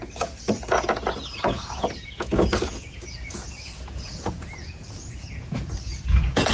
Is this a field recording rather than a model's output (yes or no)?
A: no